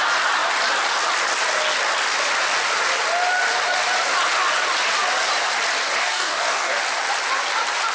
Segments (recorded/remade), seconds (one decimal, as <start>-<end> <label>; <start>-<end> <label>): 0.0-6.0 recorded; 6.0-6.8 remade; 6.8-7.9 recorded